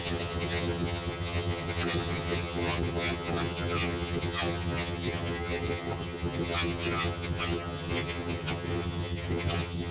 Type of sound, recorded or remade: remade